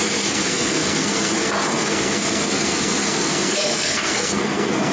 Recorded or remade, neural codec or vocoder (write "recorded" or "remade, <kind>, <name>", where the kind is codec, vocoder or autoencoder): remade, codec, SNAC